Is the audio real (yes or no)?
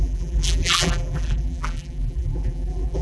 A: no